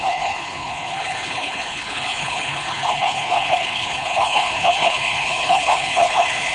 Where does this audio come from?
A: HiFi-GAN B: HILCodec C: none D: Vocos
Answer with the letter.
B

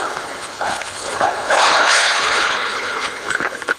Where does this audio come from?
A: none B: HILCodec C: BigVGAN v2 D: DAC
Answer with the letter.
B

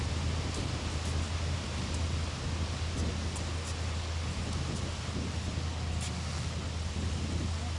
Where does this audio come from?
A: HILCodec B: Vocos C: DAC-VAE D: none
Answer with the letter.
D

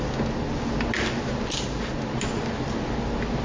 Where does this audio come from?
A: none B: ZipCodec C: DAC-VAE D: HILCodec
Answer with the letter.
A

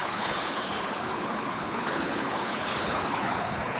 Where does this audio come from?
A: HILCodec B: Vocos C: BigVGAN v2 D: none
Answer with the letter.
A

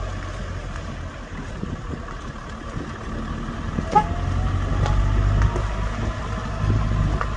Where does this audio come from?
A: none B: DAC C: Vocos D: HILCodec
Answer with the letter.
A